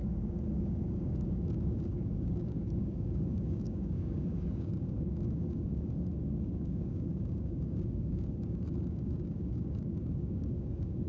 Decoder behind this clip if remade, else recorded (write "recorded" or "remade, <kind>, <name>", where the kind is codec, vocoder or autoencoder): remade, codec, DAC